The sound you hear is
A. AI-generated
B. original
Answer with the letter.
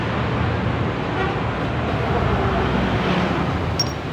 B